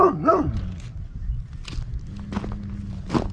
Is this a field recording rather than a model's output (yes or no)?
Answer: yes